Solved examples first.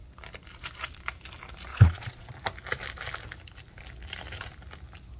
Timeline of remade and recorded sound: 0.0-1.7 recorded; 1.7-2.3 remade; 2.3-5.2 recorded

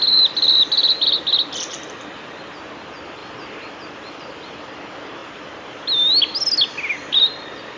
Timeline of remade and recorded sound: 0.0-7.8 recorded

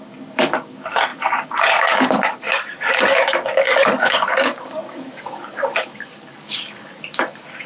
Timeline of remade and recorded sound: 0.0-7.7 remade

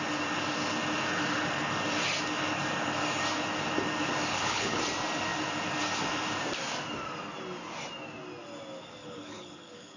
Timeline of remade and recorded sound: 0.0-4.3 recorded; 4.3-4.8 remade; 4.8-9.0 recorded; 9.0-10.0 remade

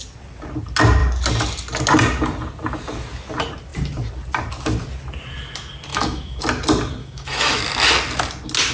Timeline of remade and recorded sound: 0.0-5.9 recorded; 5.9-6.4 remade; 6.4-7.0 recorded; 7.0-7.6 remade; 7.6-8.7 recorded

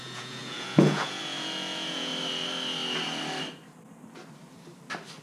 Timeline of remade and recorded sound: 0.0-2.1 remade; 2.1-5.2 recorded

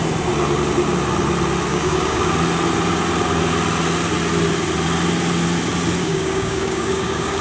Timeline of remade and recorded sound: 0.0-1.7 recorded; 1.7-2.3 remade; 2.3-6.0 recorded; 6.0-7.4 remade

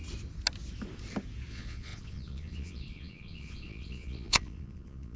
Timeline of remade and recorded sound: 0.0-1.5 recorded; 1.5-5.2 remade